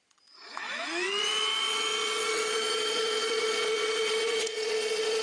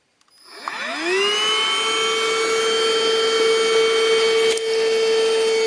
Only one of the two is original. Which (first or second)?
second